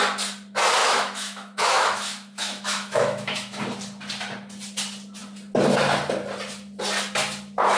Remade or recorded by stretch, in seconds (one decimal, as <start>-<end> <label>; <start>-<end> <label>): 0.0-0.8 recorded; 0.8-3.6 remade; 3.6-7.8 recorded